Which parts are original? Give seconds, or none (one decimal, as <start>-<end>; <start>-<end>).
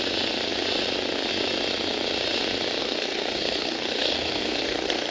0.0-2.8